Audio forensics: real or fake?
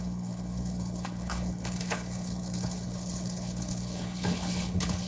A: fake